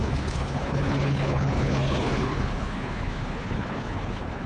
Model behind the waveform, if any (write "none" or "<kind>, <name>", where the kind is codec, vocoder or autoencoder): codec, HILCodec